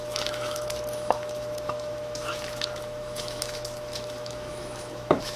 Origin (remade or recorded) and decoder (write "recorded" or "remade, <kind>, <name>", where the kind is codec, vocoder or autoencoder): remade, autoencoder, DAC-VAE